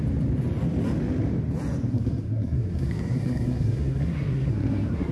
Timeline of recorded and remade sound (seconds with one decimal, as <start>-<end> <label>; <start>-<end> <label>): 0.0-1.9 recorded; 1.9-5.1 remade